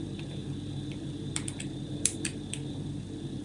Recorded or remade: recorded